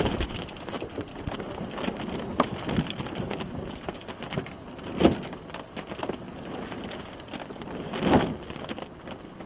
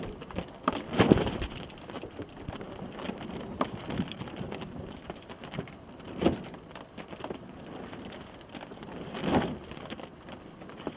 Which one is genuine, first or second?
first